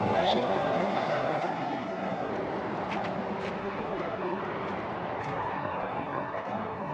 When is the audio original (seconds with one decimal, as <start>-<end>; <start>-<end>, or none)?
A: 2.3-3.6; 4.4-5.2